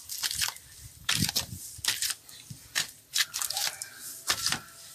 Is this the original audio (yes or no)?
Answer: no